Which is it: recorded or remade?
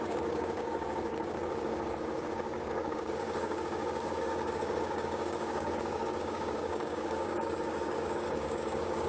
remade